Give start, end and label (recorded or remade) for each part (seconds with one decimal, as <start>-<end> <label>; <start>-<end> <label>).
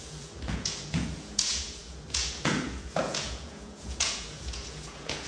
0.0-5.3 remade